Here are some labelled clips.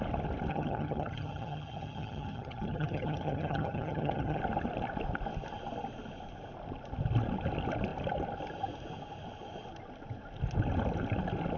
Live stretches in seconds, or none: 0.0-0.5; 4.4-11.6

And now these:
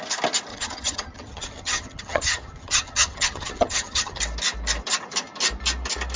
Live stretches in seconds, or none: 0.0-0.5; 4.2-6.2

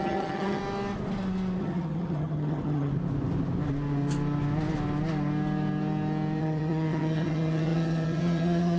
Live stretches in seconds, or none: 0.6-1.6; 2.9-6.4

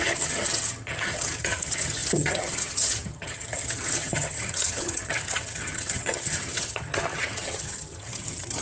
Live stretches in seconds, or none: none